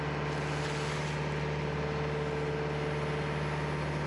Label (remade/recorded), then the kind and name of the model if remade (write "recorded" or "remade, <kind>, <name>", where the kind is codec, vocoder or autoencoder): recorded